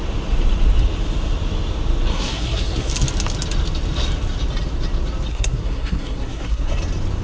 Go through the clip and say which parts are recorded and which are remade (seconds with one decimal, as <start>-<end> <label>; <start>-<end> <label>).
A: 0.0-2.1 recorded; 2.1-2.9 remade; 2.9-5.3 recorded; 5.3-6.7 remade; 6.7-7.2 recorded